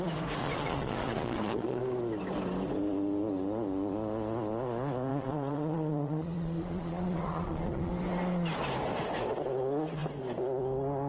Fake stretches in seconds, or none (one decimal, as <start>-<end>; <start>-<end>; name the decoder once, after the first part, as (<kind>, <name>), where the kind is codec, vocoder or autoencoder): 0.4-1.8 (vocoder, Vocos); 5.1-7.9

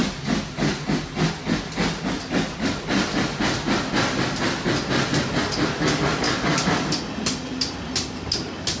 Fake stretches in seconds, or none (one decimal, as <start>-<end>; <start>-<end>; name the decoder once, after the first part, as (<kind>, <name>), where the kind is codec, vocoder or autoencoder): none

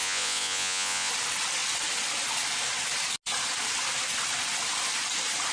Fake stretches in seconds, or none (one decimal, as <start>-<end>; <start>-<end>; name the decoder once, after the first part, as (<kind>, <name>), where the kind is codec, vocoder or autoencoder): 0.0-1.1 (vocoder, Vocos)

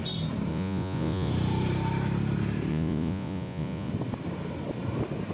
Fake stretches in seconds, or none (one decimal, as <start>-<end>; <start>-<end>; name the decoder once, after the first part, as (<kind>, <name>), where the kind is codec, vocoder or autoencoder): 0.5-1.3 (vocoder, Vocos); 2.7-3.9

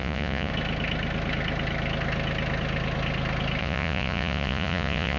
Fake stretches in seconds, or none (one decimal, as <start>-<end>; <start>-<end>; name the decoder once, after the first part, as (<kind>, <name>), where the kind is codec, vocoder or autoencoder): 0.0-0.5 (vocoder, Vocos); 3.6-5.2

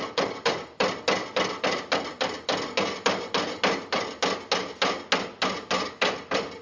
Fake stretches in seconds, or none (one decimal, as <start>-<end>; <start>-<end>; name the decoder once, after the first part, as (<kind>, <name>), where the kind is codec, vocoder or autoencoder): none

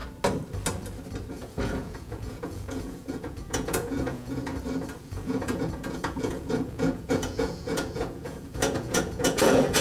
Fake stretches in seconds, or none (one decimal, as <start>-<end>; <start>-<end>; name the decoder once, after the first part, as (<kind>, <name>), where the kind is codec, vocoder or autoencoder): 1.3-4.5 (vocoder, Vocos); 5.0-9.8